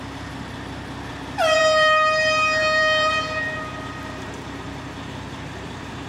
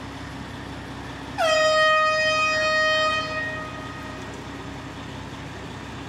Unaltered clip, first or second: second